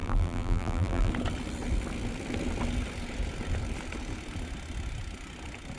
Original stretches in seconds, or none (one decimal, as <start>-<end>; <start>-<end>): 1.1-5.8